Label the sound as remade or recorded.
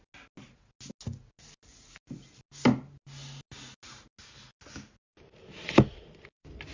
recorded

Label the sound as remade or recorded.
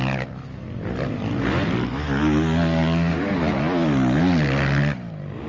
recorded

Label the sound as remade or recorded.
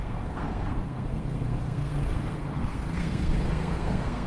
remade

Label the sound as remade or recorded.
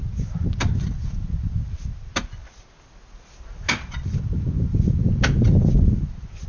recorded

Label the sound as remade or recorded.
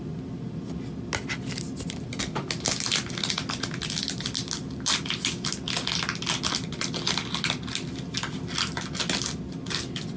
recorded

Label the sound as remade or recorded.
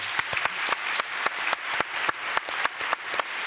recorded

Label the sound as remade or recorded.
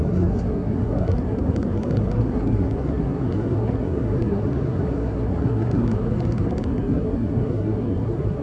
remade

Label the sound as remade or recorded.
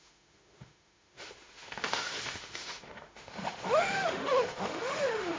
remade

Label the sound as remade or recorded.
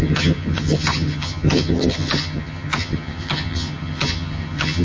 remade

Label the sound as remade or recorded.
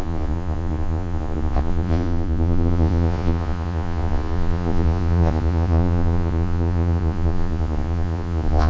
remade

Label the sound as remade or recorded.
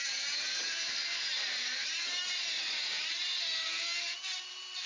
remade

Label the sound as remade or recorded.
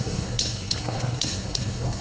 remade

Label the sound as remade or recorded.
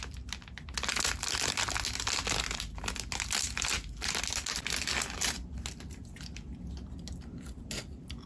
recorded